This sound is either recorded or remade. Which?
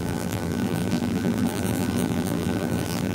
remade